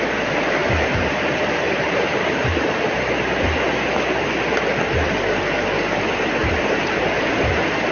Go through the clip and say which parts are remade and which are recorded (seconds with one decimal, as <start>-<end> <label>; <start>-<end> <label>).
0.0-0.6 recorded; 0.6-2.8 remade; 2.8-6.4 recorded; 6.4-7.3 remade; 7.3-7.9 recorded